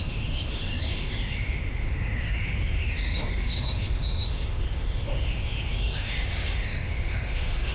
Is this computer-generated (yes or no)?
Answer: yes